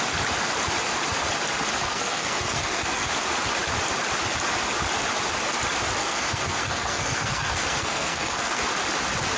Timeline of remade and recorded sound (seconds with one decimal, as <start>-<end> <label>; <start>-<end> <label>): 0.0-1.7 recorded; 1.7-3.1 remade; 3.1-6.0 recorded; 6.0-8.6 remade; 8.6-9.4 recorded